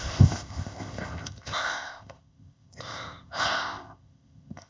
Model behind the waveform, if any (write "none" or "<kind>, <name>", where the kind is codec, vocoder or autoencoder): codec, ZipCodec